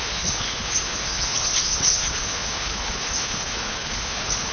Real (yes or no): no